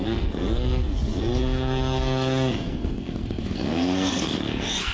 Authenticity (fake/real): fake